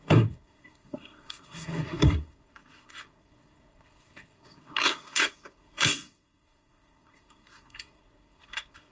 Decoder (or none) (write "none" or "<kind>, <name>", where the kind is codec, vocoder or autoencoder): codec, SNAC